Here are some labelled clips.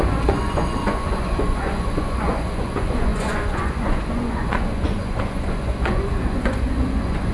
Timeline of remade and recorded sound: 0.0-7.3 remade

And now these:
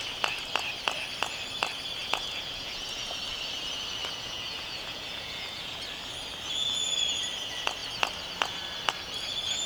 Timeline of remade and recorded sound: 0.0-2.0 recorded; 2.0-3.2 remade; 3.2-4.0 recorded; 4.0-5.8 remade; 5.8-9.7 recorded

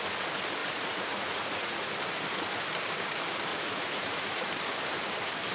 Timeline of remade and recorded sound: 0.0-0.6 recorded; 0.6-1.9 remade; 1.9-3.5 recorded; 3.5-4.5 remade; 4.5-5.5 recorded

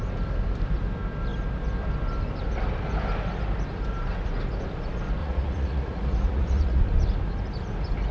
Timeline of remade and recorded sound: 0.0-5.2 recorded; 5.2-6.8 remade; 6.8-8.1 recorded